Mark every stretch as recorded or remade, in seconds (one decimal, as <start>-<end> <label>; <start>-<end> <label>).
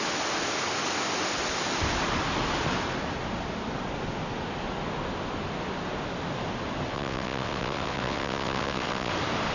0.0-6.9 recorded; 6.9-9.1 remade; 9.1-9.5 recorded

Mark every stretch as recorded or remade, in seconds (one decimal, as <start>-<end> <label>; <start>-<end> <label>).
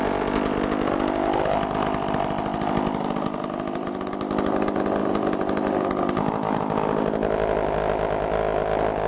0.0-9.1 recorded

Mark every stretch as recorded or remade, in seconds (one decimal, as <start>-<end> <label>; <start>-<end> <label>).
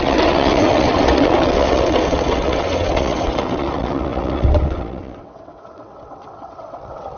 0.0-7.2 remade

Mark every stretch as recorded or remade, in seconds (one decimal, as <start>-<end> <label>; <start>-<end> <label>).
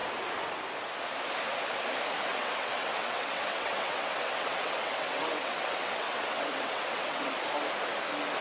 0.0-2.3 recorded; 2.3-7.3 remade; 7.3-8.4 recorded